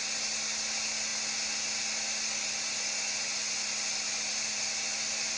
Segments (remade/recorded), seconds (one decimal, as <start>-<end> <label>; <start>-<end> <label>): 0.0-5.4 recorded